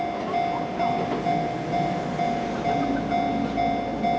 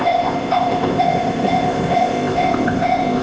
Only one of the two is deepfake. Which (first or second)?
second